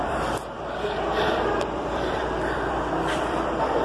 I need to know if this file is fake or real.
fake